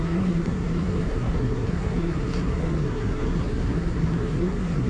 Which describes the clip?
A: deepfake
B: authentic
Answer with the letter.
A